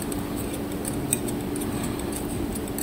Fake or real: real